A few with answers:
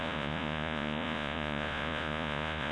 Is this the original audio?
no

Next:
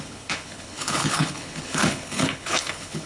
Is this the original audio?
no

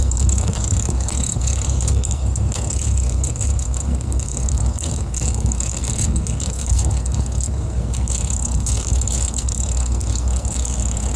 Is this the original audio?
no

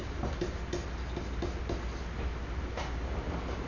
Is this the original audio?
yes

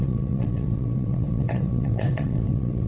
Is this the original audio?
no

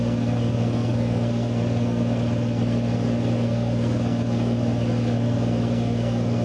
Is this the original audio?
no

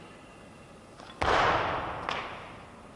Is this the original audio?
yes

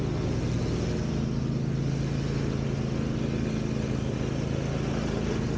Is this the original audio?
yes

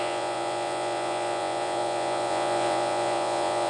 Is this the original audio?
no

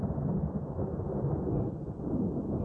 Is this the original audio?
yes